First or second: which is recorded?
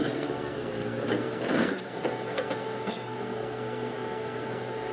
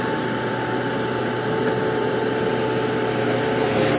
second